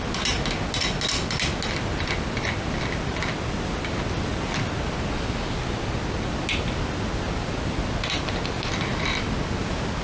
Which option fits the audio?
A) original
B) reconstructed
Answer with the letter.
A